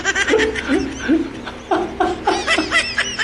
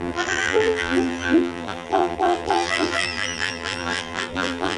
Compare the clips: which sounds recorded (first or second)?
first